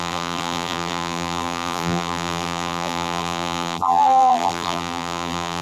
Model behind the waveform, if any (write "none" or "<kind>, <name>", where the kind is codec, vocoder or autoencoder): vocoder, BigVGAN v2